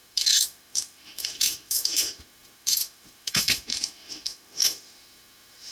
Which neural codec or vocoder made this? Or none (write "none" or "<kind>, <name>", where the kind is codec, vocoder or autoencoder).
autoencoder, DAC-VAE